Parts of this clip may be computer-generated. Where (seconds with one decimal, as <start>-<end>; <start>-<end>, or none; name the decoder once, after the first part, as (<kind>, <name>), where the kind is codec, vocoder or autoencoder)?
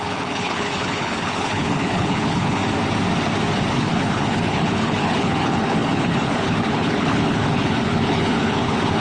0.0-2.6 (codec, HILCodec); 3.7-9.0